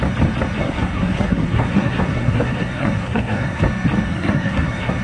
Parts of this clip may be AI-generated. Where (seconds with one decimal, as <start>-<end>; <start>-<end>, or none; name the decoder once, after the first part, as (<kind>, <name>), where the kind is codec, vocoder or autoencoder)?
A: 0.6-3.6 (codec, SNAC); 4.1-5.0